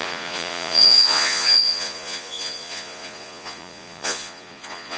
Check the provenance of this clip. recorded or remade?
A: remade